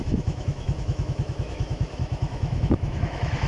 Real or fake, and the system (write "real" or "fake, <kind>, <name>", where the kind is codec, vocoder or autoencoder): fake, autoencoder, DAC-VAE